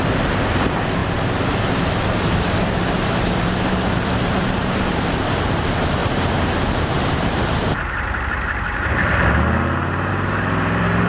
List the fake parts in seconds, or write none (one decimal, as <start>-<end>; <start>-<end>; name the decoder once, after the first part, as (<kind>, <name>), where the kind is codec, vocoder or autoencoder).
0.0-1.0 (vocoder, BigVGAN v2); 2.0-6.0; 7.5-9.0; 10.1-11.1